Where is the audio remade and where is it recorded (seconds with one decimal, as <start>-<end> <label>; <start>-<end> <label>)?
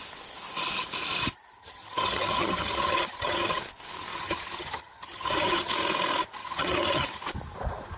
0.0-1.6 recorded; 1.6-3.6 remade; 3.6-4.1 recorded; 4.1-5.7 remade; 5.7-6.4 recorded; 6.4-7.2 remade; 7.2-8.0 recorded